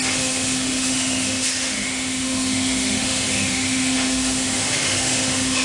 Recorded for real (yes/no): no